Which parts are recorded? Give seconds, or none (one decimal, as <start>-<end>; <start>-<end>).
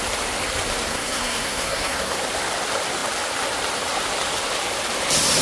0.0-0.9; 2.2-5.4